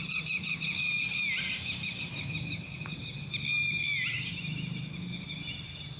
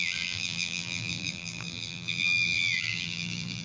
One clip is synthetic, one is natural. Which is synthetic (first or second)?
second